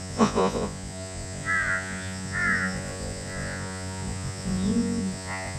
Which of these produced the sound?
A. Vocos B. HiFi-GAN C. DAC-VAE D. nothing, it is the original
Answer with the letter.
A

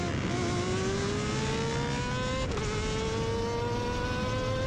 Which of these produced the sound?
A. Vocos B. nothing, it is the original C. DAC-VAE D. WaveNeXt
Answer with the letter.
B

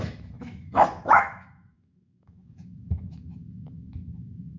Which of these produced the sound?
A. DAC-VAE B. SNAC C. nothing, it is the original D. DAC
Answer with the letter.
A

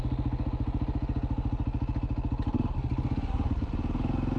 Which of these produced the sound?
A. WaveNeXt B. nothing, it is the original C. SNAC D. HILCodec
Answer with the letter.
B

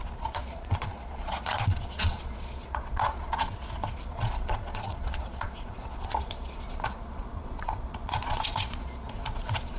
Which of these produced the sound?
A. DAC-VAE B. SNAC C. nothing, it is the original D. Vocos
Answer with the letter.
D